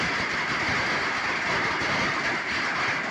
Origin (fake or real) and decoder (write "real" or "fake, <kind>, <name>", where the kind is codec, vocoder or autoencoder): real